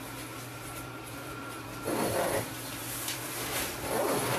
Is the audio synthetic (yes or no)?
yes